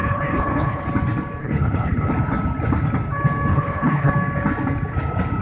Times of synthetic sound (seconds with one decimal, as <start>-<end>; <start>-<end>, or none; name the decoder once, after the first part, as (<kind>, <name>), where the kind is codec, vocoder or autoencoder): 0.0-0.9 (codec, HILCodec); 1.4-2.1; 3.5-4.1